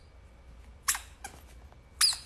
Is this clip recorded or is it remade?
recorded